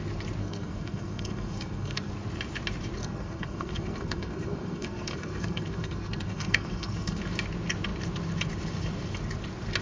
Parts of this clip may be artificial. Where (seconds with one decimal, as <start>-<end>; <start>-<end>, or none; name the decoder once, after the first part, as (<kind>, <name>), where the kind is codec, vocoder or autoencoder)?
0.4-2.1 (codec, SNAC); 3.0-7.2